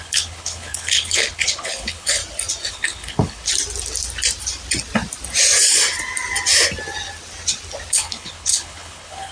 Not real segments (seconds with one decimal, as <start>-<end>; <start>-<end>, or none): 0.0-2.2; 2.7-3.5; 7.9-9.3

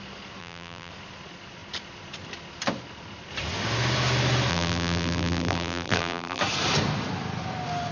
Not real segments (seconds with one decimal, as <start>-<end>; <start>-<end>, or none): 0.4-0.9; 4.5-6.4

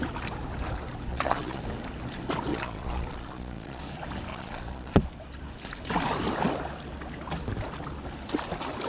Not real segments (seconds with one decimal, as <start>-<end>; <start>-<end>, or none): 1.1-1.6; 2.5-3.8; 4.3-5.0

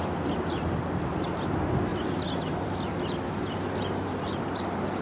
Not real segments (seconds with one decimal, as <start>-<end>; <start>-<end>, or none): none

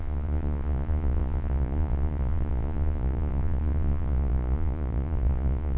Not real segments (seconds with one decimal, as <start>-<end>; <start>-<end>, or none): 0.0-5.8

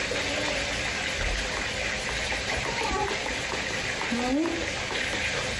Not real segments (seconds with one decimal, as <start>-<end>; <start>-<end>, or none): 1.9-5.6